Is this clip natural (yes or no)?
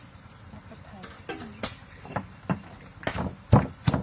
yes